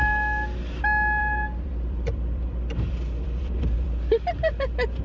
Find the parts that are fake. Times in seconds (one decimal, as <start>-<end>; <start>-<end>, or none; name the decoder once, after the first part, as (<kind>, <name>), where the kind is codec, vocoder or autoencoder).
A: 1.2-4.2 (vocoder, BigVGAN v2)